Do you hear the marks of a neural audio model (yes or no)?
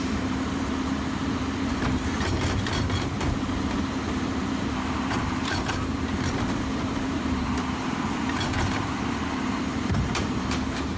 yes